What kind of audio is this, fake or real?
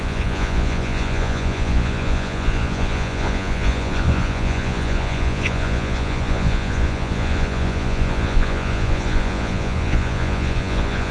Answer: fake